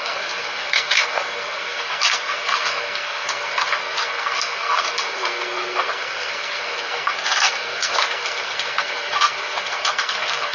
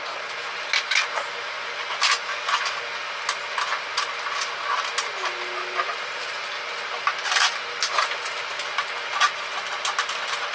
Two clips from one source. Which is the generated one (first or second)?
first